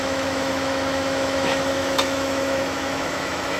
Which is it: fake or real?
fake